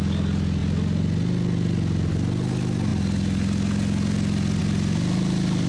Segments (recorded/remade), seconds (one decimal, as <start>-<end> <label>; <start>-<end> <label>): 0.0-5.7 recorded